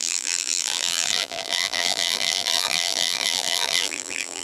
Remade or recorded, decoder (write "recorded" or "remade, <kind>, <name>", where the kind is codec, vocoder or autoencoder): remade, vocoder, BigVGAN v2